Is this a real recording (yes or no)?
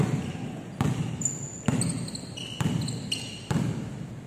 yes